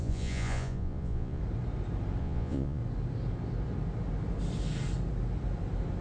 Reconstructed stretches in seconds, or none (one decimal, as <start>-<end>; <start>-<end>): 0.0-1.4; 2.2-2.8